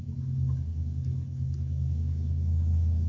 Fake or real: fake